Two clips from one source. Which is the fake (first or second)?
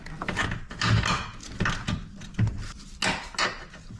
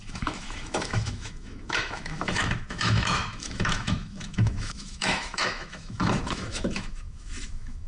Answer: second